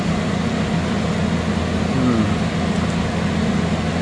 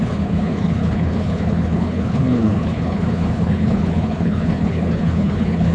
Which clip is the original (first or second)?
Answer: first